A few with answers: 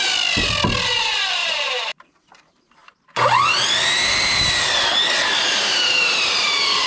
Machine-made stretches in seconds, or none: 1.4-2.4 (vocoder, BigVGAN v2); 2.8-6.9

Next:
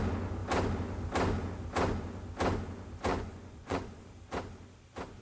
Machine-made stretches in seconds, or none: 3.1-4.0 (vocoder, Vocos)

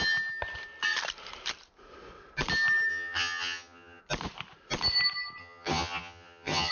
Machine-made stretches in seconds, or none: 2.9-4.0 (vocoder, HiFi-GAN); 5.4-6.7